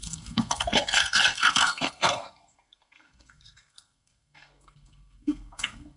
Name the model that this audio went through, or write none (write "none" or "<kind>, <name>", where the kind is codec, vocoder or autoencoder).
codec, SNAC